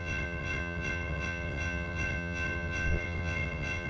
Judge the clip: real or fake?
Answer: fake